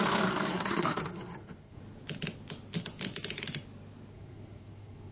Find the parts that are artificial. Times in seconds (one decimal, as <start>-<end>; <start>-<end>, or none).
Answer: 0.5-1.8; 4.1-5.1